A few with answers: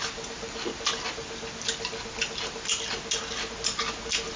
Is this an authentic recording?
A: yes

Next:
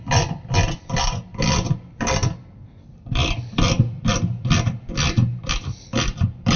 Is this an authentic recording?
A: yes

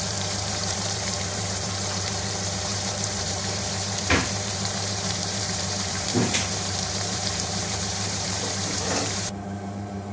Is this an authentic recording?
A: no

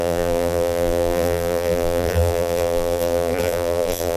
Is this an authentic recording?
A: no